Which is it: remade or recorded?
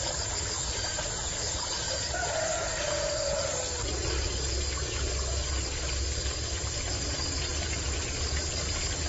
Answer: recorded